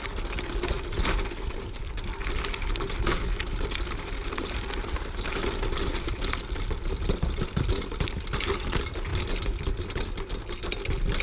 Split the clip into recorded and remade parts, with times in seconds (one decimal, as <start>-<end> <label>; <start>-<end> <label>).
0.0-11.2 recorded